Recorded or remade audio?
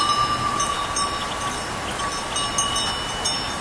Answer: recorded